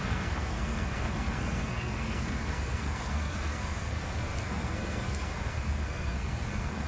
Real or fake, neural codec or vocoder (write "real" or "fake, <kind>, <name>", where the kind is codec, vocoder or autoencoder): fake, codec, SNAC